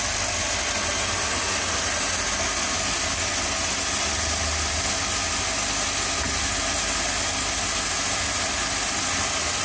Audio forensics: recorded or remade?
recorded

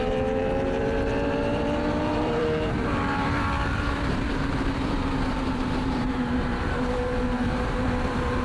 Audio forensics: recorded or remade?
remade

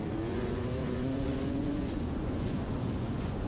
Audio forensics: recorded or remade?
remade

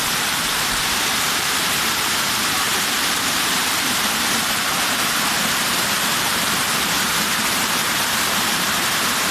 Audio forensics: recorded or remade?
remade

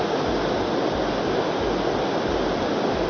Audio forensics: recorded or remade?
recorded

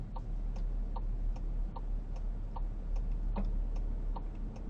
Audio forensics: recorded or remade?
recorded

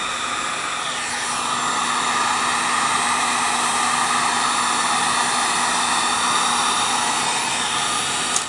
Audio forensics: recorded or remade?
recorded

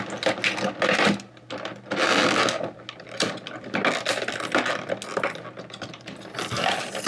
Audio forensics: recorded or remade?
recorded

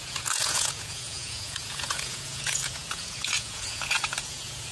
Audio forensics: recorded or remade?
remade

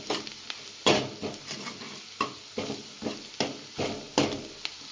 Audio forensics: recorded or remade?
recorded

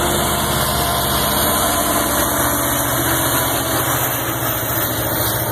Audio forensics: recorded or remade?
recorded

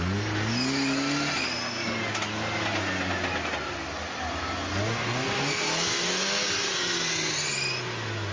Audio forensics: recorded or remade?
recorded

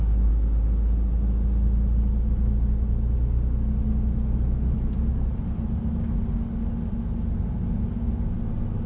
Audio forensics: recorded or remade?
recorded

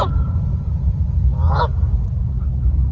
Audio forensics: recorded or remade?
remade